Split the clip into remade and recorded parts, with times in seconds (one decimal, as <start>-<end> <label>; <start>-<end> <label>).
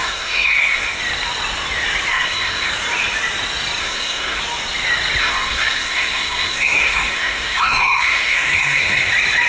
0.0-1.0 remade; 1.0-2.1 recorded; 2.1-2.7 remade; 2.7-3.8 recorded; 3.8-4.4 remade; 4.4-5.2 recorded; 5.2-9.1 remade; 9.1-9.5 recorded